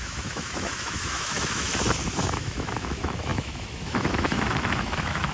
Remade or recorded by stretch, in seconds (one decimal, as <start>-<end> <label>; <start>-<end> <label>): 0.0-1.7 remade; 1.7-2.2 recorded; 2.2-5.3 remade